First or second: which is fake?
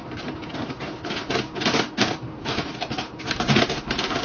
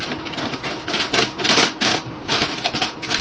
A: second